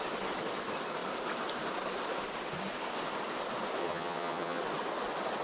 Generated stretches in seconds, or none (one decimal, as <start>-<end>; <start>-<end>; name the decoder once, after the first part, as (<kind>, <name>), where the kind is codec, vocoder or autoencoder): 3.8-4.6 (vocoder, HiFi-GAN)

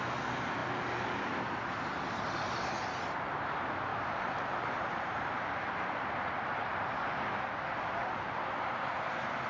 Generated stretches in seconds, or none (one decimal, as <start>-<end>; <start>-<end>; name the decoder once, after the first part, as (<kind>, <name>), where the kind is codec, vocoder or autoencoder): 3.9-7.1 (vocoder, BigVGAN v2)

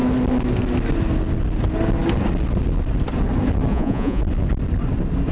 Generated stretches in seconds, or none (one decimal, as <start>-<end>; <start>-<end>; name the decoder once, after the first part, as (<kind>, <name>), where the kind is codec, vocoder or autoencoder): 3.7-4.2 (vocoder, Vocos)

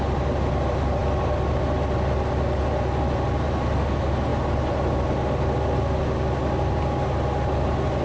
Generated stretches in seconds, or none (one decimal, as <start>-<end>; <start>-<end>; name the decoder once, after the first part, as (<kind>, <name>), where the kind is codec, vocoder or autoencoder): none